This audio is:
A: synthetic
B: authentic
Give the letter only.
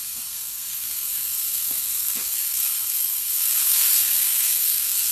A